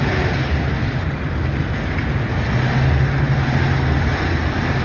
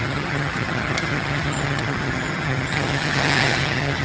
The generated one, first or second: second